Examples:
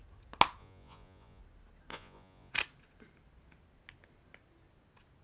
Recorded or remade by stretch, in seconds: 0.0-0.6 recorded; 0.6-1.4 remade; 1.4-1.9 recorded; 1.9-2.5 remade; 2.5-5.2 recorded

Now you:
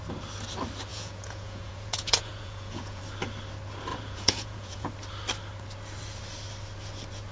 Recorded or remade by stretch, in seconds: 0.0-0.9 recorded; 0.9-3.0 remade; 3.0-3.9 recorded; 3.9-4.9 remade; 4.9-7.3 recorded

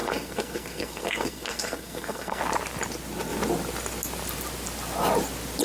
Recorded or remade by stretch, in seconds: 0.0-2.4 remade; 2.4-5.6 recorded